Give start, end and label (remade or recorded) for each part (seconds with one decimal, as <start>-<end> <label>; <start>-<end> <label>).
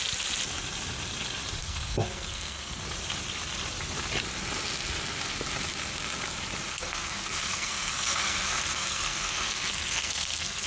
0.0-1.6 recorded; 1.6-2.8 remade; 2.8-6.7 recorded; 6.7-10.7 remade